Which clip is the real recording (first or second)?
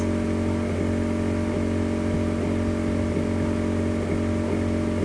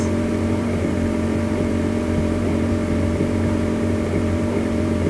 first